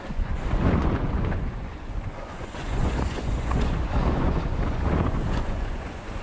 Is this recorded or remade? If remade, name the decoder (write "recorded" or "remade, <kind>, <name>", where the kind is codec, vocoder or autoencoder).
remade, vocoder, Vocos